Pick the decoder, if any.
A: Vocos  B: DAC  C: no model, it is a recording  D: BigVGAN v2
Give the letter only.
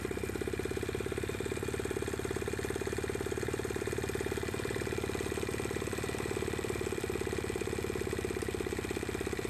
D